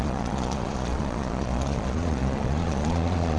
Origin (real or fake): fake